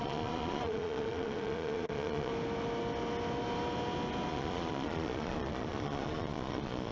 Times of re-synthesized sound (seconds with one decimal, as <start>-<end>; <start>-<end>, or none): 0.0-2.3; 4.3-6.9